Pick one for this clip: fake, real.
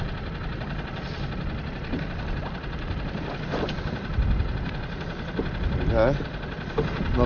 real